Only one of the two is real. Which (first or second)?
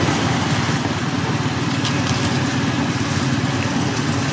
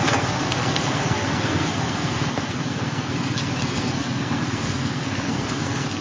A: first